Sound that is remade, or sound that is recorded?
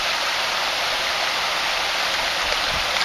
recorded